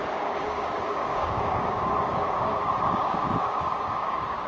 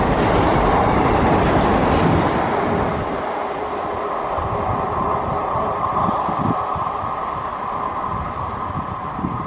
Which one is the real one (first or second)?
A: second